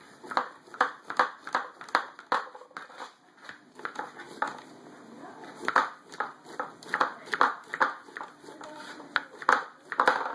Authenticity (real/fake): real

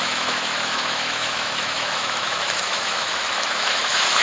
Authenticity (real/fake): fake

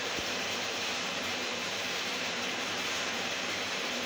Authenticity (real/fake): fake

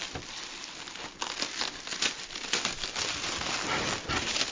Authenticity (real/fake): real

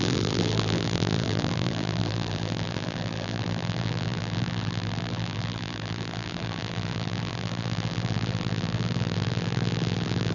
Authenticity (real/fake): fake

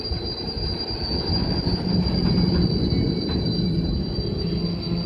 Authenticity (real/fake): real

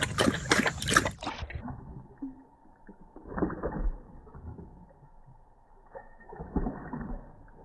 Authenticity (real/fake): real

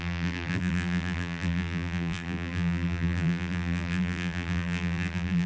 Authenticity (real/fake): fake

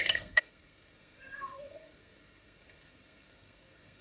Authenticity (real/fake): fake